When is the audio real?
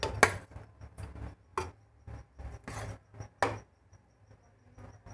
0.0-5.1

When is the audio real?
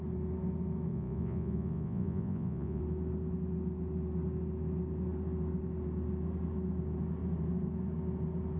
0.0-0.9; 2.8-8.6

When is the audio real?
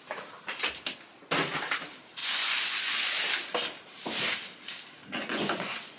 0.0-2.2; 3.1-5.0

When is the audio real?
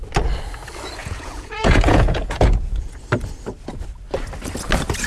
0.0-1.0; 2.9-5.1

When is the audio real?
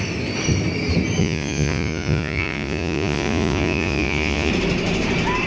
0.0-1.2; 4.5-5.5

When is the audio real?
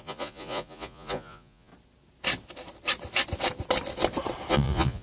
1.7-4.5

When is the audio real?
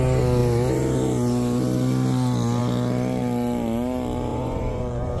0.0-4.3